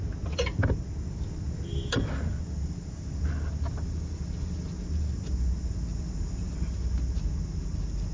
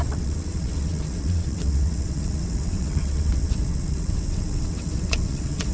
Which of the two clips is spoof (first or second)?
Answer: second